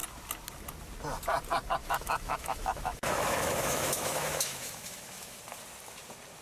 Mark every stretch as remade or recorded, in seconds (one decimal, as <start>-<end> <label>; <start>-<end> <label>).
0.0-1.8 recorded; 1.8-5.4 remade; 5.4-6.4 recorded